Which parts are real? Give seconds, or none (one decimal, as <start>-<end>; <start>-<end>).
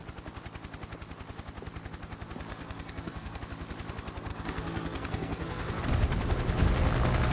0.0-2.5; 3.4-4.3; 5.8-7.3